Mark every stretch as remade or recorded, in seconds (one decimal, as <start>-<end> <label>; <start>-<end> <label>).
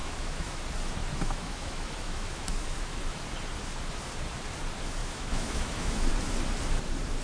0.0-0.6 remade; 0.6-1.1 recorded; 1.1-3.2 remade; 3.2-5.0 recorded; 5.0-6.1 remade; 6.1-7.2 recorded